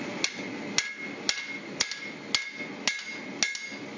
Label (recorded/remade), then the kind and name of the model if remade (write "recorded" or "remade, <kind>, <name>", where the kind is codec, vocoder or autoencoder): recorded